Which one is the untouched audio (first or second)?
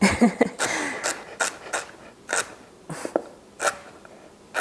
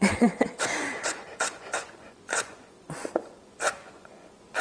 first